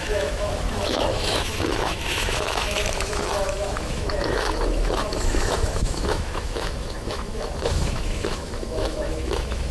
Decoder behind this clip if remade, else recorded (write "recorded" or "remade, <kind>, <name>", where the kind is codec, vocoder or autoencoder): remade, autoencoder, DAC-VAE